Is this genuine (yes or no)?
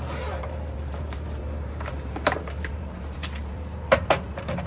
no